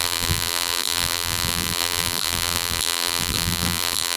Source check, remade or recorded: remade